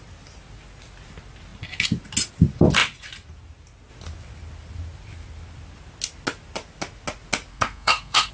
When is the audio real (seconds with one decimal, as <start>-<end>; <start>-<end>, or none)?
0.0-7.5